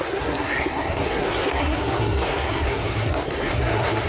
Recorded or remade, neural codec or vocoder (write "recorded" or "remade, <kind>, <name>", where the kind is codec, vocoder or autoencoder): remade, codec, SNAC